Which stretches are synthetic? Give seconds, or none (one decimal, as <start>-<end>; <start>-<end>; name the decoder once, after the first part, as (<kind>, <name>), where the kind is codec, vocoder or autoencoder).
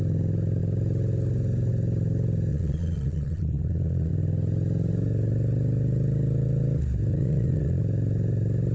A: 2.5-4.1 (vocoder, Vocos); 7.1-7.8